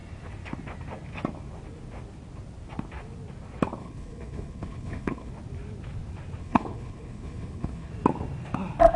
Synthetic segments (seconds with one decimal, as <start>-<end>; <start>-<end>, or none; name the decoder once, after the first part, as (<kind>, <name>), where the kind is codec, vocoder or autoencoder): 3.8-5.3 (codec, HILCodec); 6.4-7.9